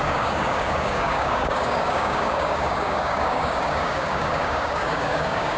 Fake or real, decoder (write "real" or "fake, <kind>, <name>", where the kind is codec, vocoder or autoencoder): fake, codec, DAC